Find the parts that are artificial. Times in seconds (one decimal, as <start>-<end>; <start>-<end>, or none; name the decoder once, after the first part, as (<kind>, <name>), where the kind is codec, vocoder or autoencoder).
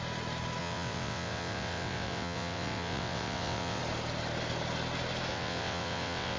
0.6-3.8 (vocoder, WaveNeXt); 5.3-6.4